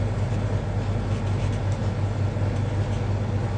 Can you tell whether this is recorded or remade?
recorded